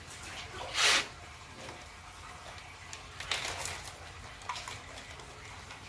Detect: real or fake real